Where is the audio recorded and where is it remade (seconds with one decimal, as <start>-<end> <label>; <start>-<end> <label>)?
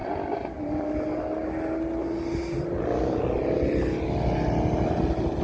0.0-5.4 recorded